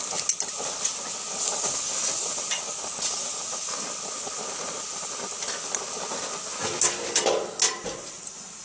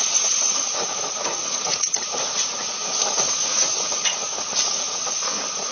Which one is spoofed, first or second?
second